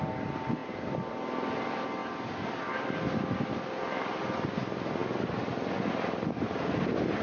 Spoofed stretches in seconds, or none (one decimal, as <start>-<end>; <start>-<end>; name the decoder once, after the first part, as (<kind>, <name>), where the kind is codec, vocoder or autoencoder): none